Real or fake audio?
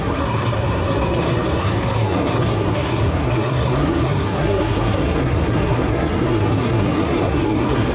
fake